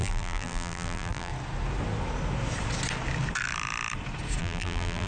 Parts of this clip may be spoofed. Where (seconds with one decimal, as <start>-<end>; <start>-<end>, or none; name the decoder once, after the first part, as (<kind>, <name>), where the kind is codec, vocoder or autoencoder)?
0.0-1.3 (vocoder, BigVGAN v2); 4.4-5.1